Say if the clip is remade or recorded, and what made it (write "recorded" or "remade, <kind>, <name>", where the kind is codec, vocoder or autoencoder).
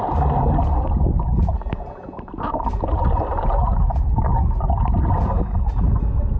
recorded